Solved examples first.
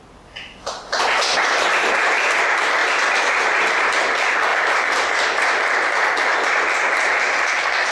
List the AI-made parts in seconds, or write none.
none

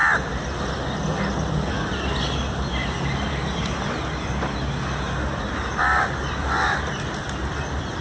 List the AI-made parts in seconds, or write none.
6.4-6.9 (vocoder, BigVGAN v2)

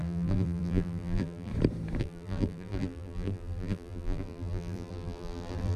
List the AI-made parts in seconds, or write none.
0.0-1.5 (vocoder, BigVGAN v2); 2.0-5.8

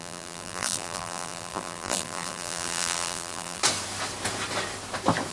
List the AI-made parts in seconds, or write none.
0.0-3.6 (vocoder, BigVGAN v2)